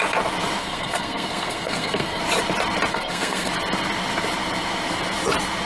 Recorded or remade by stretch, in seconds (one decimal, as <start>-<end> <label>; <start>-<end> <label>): 0.0-0.6 recorded; 0.6-2.2 remade; 2.2-2.9 recorded; 2.9-3.5 remade; 3.5-5.7 recorded